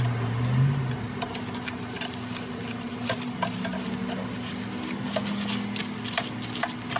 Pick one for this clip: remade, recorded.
recorded